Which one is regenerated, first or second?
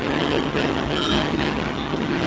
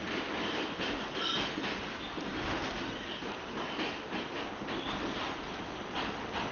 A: first